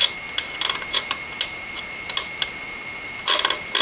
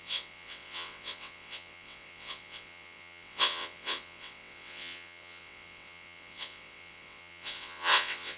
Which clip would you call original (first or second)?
first